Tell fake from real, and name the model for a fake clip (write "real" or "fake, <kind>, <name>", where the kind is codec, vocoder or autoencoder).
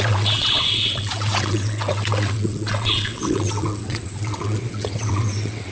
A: fake, vocoder, WaveNeXt